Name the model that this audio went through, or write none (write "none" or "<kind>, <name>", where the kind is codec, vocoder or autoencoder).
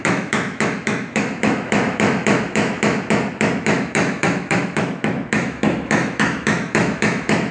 autoencoder, DAC-VAE